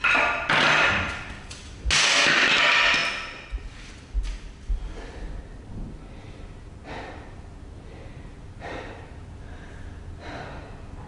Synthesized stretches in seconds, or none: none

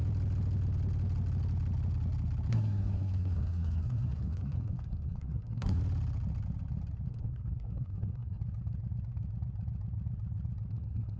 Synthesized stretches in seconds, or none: 2.5-5.8 (codec, SNAC); 7.1-8.4; 10.7-11.2

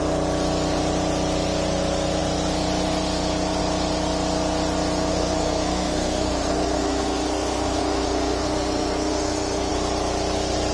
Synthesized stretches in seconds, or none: 5.1-9.7 (codec, SNAC)

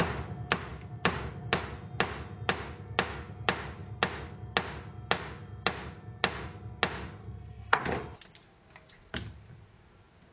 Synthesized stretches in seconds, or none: 7.2-7.8 (codec, SNAC)

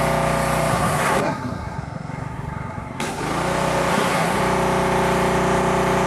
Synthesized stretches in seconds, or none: 0.7-3.2 (codec, SNAC); 3.9-4.4